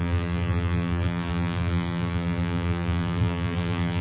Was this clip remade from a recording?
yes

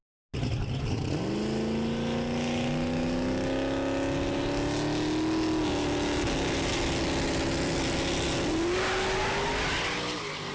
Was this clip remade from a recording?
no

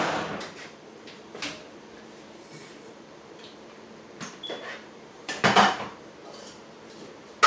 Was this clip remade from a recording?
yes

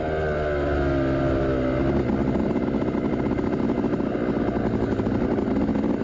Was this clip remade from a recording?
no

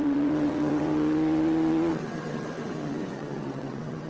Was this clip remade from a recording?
yes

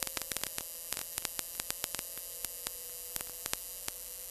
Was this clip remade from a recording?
no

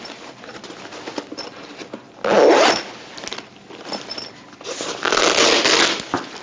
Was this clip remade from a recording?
no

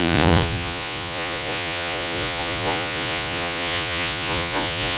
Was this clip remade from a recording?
yes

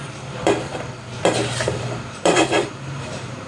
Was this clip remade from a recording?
yes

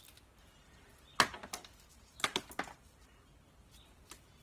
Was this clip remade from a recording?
no